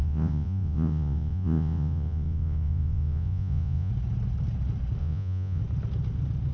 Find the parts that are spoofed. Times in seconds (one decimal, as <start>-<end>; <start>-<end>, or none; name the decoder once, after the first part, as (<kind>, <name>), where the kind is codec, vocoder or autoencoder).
0.0-3.9 (vocoder, Vocos); 5.0-5.6

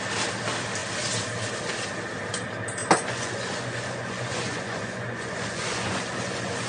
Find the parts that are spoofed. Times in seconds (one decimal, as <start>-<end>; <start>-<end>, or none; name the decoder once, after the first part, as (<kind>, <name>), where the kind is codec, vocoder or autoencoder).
2.8-6.7 (vocoder, Vocos)

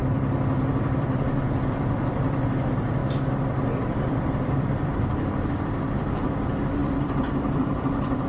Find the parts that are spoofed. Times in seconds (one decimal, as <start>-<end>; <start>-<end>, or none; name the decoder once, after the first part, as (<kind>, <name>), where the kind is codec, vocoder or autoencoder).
0.8-3.0 (vocoder, BigVGAN v2); 3.8-8.3

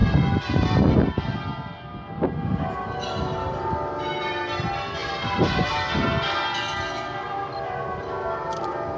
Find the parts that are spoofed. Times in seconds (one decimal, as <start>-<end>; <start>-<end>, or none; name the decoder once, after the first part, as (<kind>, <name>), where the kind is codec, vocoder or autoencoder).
5.0-5.7 (vocoder, BigVGAN v2)

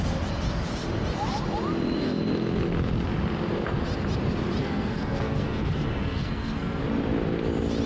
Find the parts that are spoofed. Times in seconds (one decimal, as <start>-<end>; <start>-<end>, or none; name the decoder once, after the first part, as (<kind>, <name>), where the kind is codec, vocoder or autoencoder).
4.6-6.8 (codec, SNAC)